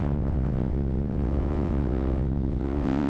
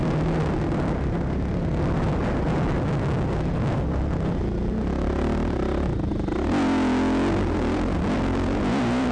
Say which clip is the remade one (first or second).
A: first